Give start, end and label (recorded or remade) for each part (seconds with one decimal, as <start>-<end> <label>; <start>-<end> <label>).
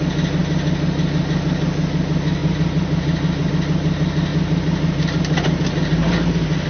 0.0-2.4 recorded; 2.4-3.5 remade; 3.5-4.3 recorded; 4.3-5.6 remade; 5.6-6.7 recorded